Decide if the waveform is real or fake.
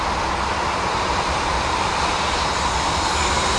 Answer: real